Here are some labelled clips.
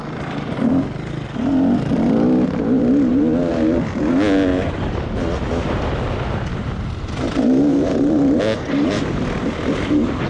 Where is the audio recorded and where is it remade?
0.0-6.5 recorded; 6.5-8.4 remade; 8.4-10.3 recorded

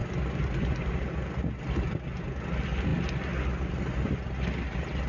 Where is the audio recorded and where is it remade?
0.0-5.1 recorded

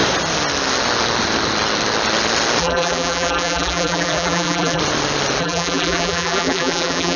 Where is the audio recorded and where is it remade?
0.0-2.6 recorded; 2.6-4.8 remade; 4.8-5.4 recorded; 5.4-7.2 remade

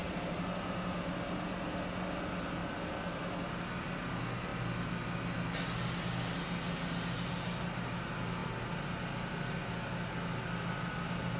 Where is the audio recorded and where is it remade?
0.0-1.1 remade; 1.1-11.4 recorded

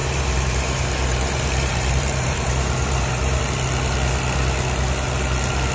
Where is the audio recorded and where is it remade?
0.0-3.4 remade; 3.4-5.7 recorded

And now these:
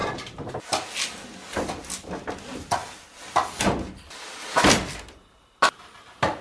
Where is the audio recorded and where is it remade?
0.0-0.5 remade; 0.5-6.4 recorded

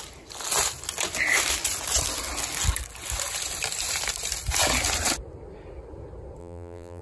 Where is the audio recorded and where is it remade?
0.0-6.4 recorded; 6.4-7.0 remade